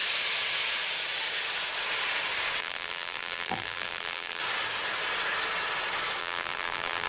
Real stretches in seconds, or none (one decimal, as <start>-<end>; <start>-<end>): 0.0-2.6; 4.4-6.2

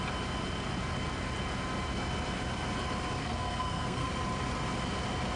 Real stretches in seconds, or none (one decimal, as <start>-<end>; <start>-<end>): 0.0-3.2; 4.1-5.4

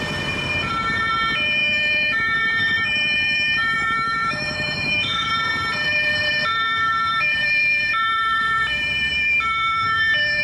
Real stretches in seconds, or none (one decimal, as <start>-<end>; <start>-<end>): 0.0-1.6; 5.3-10.4

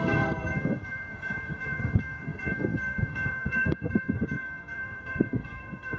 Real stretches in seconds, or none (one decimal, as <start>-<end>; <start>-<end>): none

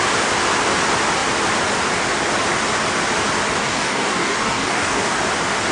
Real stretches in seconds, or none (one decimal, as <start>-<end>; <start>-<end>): 0.0-3.6; 5.2-5.7

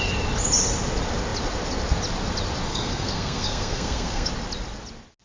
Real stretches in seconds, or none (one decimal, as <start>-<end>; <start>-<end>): 0.0-2.7; 4.3-5.2